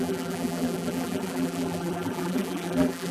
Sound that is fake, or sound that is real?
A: fake